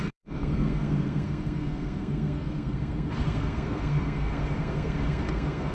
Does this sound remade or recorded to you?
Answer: remade